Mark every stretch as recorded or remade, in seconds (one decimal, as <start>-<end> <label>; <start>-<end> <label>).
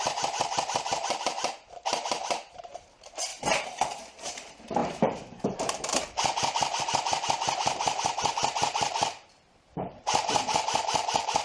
0.0-11.4 remade